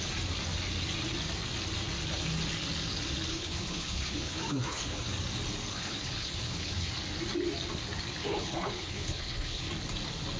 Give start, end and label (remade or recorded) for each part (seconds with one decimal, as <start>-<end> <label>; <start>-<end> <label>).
0.0-3.3 recorded; 3.3-5.1 remade; 5.1-5.7 recorded; 5.7-6.9 remade; 6.9-8.2 recorded; 8.2-9.7 remade; 9.7-10.4 recorded